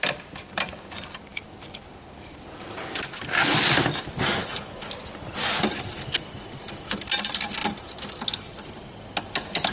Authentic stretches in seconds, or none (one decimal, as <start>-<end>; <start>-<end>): 0.0-4.4; 4.9-9.7